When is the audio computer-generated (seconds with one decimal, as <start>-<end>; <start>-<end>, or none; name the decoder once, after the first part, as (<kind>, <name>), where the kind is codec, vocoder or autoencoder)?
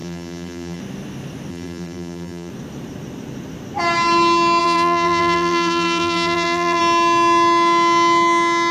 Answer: 0.0-0.8 (vocoder, BigVGAN v2); 1.5-2.5; 4.6-6.8